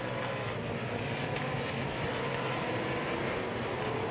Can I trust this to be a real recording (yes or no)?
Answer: no